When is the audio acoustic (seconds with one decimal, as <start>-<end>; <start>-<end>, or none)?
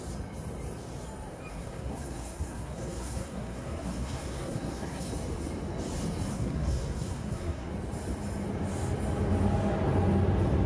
0.0-1.5; 5.1-6.3; 7.7-10.7